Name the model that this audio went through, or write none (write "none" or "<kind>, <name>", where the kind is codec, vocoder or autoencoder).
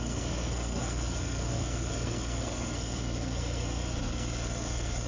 codec, SNAC